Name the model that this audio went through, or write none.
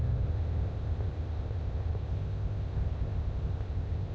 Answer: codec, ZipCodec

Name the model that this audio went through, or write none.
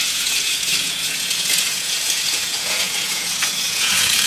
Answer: vocoder, Vocos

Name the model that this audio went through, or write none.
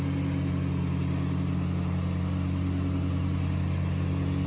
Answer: none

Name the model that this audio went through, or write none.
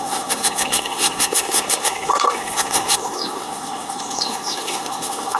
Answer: codec, SNAC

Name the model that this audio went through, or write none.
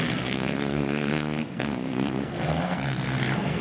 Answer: codec, SNAC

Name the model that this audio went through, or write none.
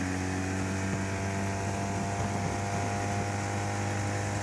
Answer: none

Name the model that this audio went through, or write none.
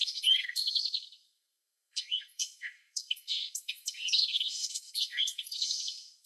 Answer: codec, SNAC